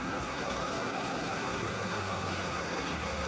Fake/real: fake